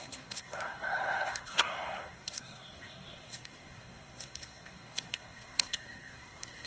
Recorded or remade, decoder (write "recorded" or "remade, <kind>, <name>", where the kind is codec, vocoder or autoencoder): remade, codec, SNAC